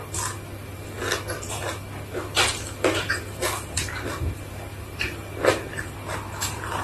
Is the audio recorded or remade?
recorded